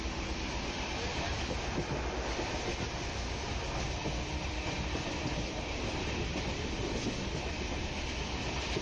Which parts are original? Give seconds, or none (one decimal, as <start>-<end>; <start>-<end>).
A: 0.0-8.8